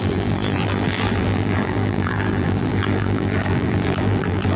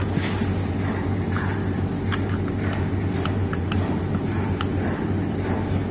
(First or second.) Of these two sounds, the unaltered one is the second